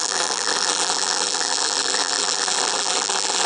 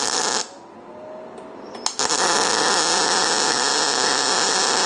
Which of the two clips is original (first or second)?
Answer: second